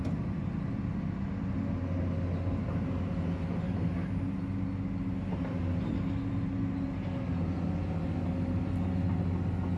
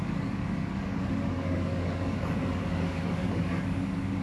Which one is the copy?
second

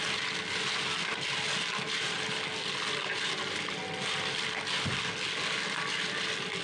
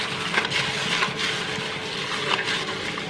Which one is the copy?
second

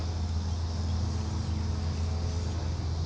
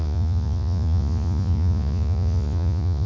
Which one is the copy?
second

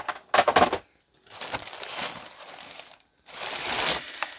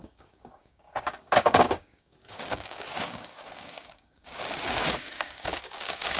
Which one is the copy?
second